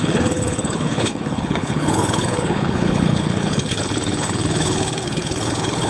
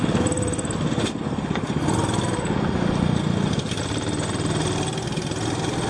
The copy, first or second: first